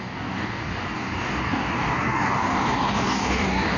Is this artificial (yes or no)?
yes